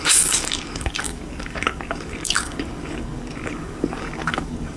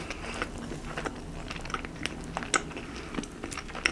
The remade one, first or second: first